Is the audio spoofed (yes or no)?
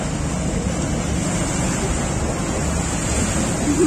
no